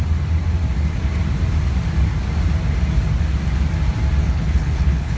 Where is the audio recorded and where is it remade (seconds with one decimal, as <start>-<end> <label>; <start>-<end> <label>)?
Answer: 0.0-4.2 recorded; 4.2-5.2 remade